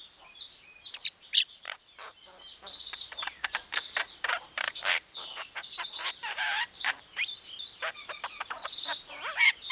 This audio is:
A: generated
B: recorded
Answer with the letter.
A